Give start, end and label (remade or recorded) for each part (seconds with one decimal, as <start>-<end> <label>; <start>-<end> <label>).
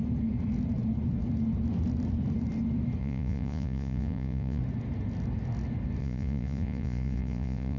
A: 0.0-3.0 recorded; 3.0-4.6 remade; 4.6-6.0 recorded; 6.0-7.8 remade